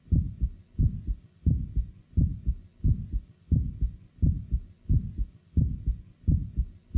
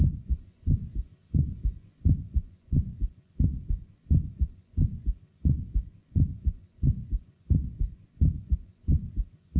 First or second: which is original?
first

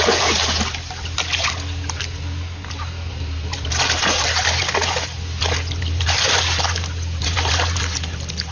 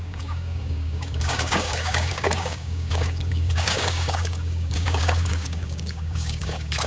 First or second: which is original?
first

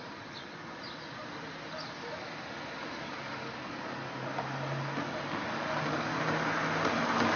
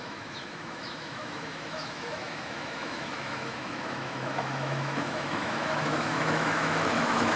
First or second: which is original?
first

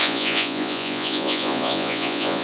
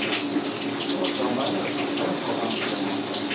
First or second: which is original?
second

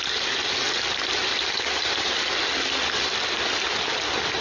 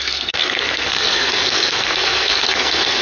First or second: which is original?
first